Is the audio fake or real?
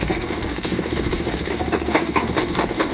fake